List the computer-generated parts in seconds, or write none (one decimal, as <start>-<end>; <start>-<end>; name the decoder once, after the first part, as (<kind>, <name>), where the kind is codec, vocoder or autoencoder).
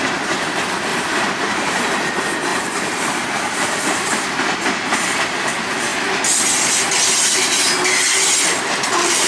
0.9-1.8 (vocoder, BigVGAN v2); 2.5-5.5